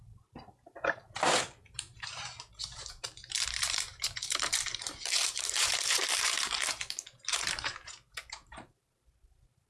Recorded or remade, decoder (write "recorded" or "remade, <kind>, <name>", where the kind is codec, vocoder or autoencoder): remade, vocoder, BigVGAN v2